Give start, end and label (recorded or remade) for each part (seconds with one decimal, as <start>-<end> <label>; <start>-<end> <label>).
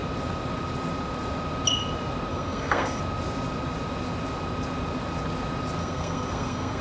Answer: 0.0-2.3 recorded; 2.3-3.0 remade; 3.0-5.8 recorded; 5.8-6.8 remade